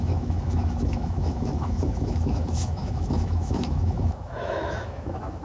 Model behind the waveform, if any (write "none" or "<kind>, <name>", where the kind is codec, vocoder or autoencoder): autoencoder, DAC-VAE